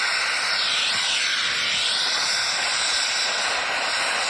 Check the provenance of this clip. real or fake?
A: real